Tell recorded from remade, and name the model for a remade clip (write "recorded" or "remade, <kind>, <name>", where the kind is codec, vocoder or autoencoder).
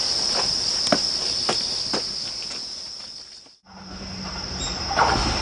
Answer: recorded